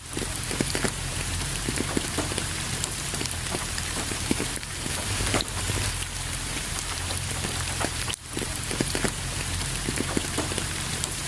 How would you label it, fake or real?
fake